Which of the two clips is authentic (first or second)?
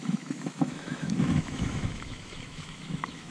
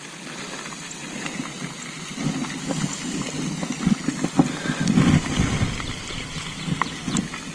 second